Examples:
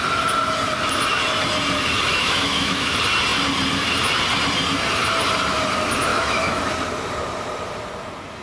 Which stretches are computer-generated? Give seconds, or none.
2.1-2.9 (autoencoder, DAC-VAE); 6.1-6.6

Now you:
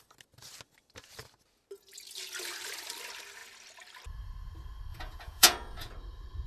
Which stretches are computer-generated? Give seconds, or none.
4.9-5.9 (vocoder, Vocos)